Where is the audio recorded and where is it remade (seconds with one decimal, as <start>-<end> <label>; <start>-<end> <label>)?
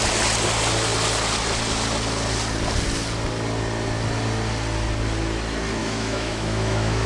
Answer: 0.0-5.8 recorded; 5.8-7.1 remade